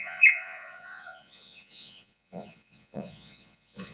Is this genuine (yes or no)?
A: no